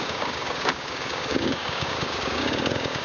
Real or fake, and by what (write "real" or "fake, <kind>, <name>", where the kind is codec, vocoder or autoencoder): fake, codec, DAC